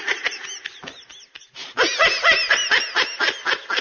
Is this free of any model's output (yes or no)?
yes